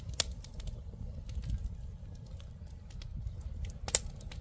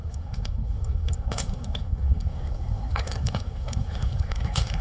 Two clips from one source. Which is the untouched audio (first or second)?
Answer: first